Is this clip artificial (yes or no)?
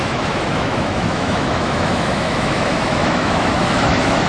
yes